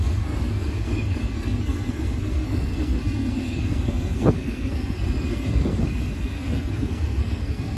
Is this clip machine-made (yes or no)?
yes